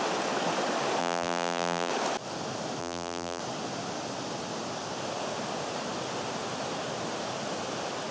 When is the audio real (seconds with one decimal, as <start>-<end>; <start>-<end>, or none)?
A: 0.0-1.0; 1.9-2.8; 3.4-8.1